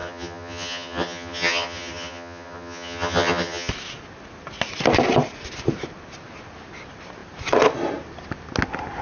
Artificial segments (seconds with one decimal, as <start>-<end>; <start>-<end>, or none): 0.0-3.7